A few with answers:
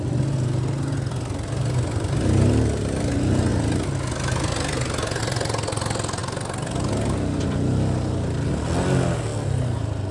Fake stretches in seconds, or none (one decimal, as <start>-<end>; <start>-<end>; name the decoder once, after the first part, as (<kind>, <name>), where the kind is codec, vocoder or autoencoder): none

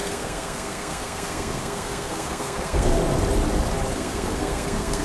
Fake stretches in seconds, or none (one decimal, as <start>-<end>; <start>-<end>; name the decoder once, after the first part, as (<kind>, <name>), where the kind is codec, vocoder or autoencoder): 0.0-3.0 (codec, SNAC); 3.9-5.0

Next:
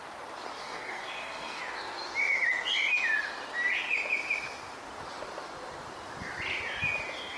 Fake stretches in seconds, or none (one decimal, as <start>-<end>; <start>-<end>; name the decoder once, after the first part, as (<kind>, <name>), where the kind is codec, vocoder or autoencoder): 0.6-1.6 (codec, SNAC)

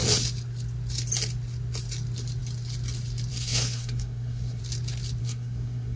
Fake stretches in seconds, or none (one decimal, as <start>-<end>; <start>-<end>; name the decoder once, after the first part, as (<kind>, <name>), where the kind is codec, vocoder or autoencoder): 3.3-4.6 (codec, SNAC); 5.2-6.0

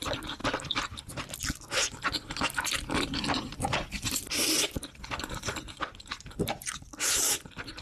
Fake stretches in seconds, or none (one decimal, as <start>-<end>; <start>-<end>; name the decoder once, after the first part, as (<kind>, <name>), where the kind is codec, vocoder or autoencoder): none